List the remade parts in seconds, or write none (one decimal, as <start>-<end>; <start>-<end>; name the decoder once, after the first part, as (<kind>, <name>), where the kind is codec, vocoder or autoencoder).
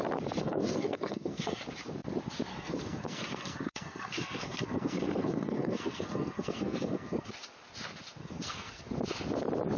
0.4-1.6 (codec, SNAC); 2.5-7.3; 8.2-8.8